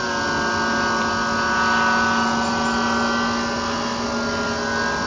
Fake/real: real